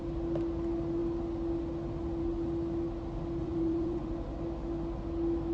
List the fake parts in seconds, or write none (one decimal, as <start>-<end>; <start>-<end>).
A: 3.4-4.1